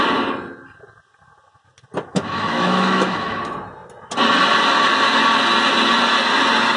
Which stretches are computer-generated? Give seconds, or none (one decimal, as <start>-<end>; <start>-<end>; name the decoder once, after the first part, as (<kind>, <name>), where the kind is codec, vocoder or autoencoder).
2.1-3.4 (autoencoder, DAC-VAE)